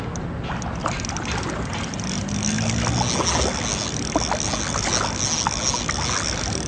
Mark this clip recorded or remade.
recorded